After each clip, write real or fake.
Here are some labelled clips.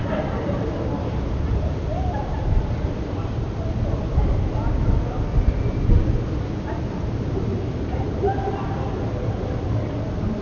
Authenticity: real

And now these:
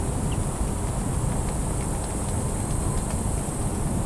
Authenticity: real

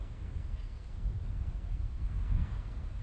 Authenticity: fake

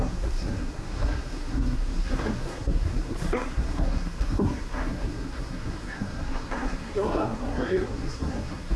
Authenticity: fake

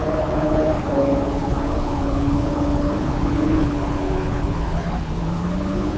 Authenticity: fake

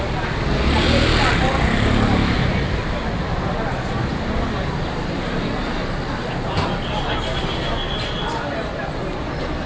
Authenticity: real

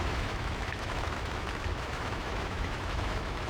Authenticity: fake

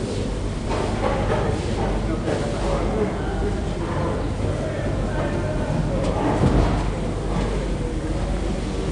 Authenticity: real